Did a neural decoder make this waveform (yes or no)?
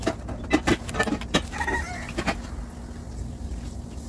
no